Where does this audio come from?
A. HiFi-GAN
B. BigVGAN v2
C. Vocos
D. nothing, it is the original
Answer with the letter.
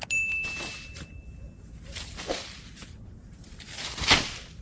D